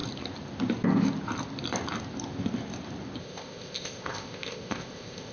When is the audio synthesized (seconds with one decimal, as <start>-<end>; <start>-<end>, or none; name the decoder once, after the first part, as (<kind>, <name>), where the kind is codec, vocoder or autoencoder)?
3.2-5.3 (codec, ZipCodec)